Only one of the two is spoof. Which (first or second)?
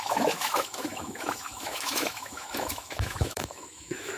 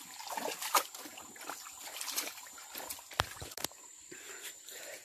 first